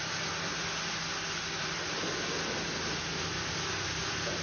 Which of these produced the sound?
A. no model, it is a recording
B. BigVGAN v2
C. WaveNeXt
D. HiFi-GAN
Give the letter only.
A